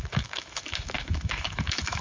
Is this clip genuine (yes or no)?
no